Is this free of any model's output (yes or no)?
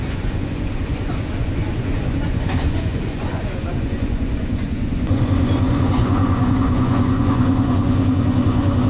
no